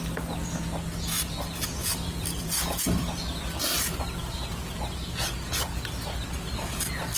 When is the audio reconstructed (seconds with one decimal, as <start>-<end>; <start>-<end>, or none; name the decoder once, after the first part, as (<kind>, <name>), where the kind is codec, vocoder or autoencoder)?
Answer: 1.8-3.6 (vocoder, BigVGAN v2)